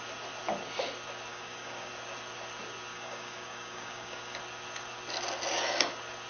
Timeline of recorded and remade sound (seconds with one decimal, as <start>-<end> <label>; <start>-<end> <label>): 0.0-1.3 recorded; 1.3-1.9 remade; 1.9-2.9 recorded; 2.9-4.4 remade; 4.4-6.3 recorded